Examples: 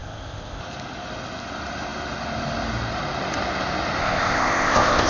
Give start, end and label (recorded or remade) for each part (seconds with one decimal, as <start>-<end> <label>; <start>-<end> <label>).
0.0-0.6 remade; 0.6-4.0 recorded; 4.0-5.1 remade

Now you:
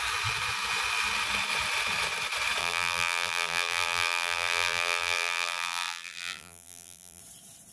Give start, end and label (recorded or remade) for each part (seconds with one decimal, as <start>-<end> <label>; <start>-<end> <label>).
0.0-2.6 recorded; 2.6-7.2 remade; 7.2-7.7 recorded

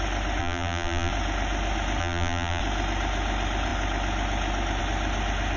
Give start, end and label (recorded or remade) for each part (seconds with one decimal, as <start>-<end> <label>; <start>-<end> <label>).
0.0-0.4 recorded; 0.4-1.1 remade; 1.1-2.0 recorded; 2.0-2.6 remade; 2.6-5.6 recorded

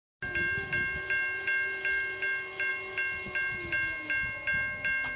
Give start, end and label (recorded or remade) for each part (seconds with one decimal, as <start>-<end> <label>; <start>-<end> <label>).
0.0-5.2 recorded

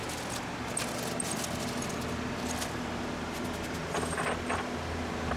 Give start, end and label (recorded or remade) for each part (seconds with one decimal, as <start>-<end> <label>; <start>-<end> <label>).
0.0-5.4 recorded

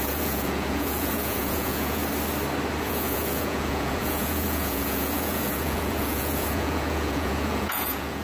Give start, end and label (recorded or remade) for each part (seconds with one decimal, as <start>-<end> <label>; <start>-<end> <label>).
0.0-2.0 remade; 2.0-2.8 recorded; 2.8-8.2 remade

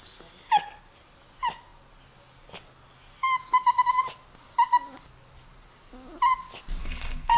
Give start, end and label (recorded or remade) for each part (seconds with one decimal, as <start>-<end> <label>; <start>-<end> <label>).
0.0-6.8 recorded; 6.8-7.4 remade